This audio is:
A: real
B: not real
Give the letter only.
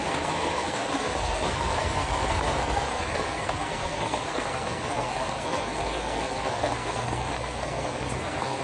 B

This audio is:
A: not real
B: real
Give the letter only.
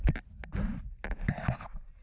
B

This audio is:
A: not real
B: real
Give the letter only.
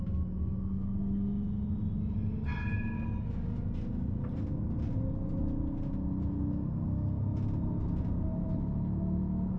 B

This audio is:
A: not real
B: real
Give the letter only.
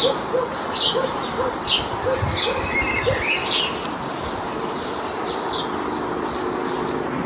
B